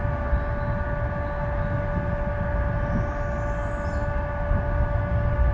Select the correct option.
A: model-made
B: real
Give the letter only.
B